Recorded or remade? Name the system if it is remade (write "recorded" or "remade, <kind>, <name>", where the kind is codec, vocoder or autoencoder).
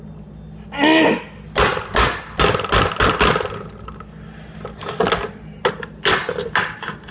recorded